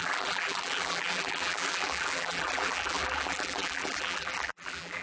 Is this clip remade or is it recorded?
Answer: remade